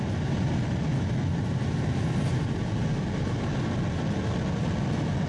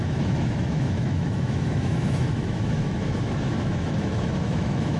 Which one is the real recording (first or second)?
first